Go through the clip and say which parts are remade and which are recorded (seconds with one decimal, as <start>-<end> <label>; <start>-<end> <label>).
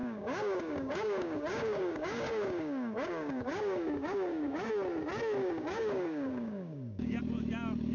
0.0-4.7 remade; 4.7-5.4 recorded; 5.4-7.2 remade; 7.2-7.9 recorded